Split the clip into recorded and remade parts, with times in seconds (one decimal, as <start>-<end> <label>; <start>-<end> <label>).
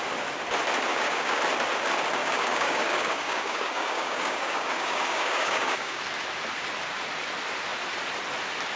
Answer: 0.0-0.9 recorded; 0.9-1.4 remade; 1.4-2.2 recorded; 2.2-6.0 remade; 6.0-8.8 recorded